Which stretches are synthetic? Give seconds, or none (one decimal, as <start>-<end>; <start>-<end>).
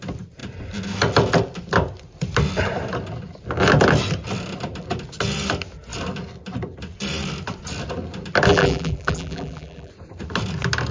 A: 8.5-9.9